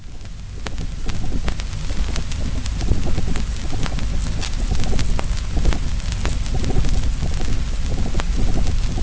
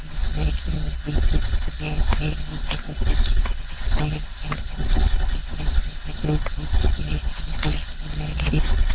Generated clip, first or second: second